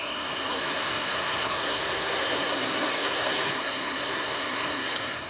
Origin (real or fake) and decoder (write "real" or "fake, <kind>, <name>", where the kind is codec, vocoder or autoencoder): fake, codec, SNAC